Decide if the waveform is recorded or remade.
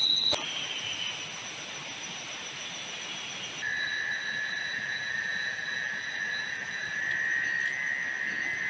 recorded